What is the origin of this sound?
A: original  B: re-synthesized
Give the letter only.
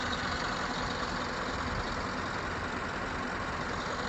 A